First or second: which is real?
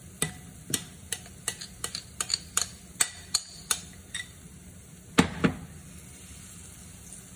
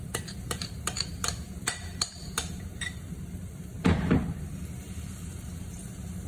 first